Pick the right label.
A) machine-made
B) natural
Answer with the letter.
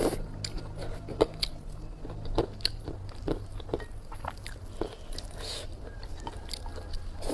B